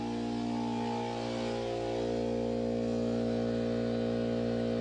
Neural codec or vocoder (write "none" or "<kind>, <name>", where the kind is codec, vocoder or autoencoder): none